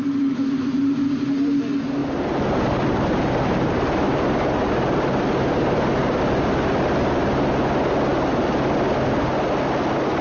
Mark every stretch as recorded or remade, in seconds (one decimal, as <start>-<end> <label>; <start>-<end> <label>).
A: 0.0-2.0 recorded; 2.0-6.2 remade; 6.2-10.2 recorded

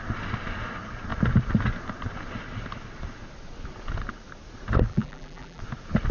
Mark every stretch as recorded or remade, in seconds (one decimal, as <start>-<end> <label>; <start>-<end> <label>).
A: 0.0-4.9 recorded; 4.9-5.6 remade; 5.6-6.1 recorded

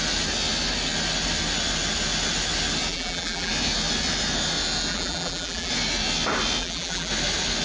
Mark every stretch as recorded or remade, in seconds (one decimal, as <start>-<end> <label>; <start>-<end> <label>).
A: 0.0-2.9 recorded; 2.9-3.5 remade; 3.5-4.9 recorded; 4.9-5.7 remade; 5.7-6.6 recorded; 6.6-7.1 remade; 7.1-7.6 recorded

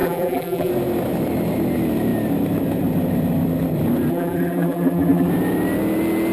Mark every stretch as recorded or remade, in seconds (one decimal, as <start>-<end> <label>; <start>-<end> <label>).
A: 0.0-0.7 remade; 0.7-4.1 recorded; 4.1-5.3 remade; 5.3-6.3 recorded

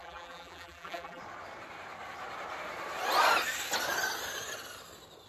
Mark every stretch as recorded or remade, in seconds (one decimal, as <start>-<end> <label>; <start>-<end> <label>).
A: 0.0-1.2 remade; 1.2-5.3 recorded

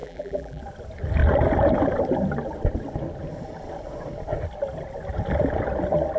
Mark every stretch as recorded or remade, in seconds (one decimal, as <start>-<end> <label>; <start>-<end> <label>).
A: 0.0-0.6 remade; 0.6-6.2 recorded